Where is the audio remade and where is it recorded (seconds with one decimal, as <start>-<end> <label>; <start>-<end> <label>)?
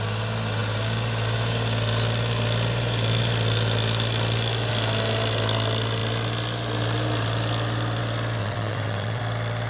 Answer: 0.0-8.4 recorded; 8.4-9.2 remade; 9.2-9.7 recorded